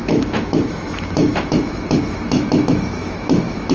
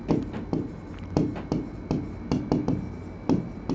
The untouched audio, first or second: second